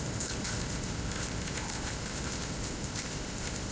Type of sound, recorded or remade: remade